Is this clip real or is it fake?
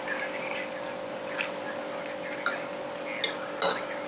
real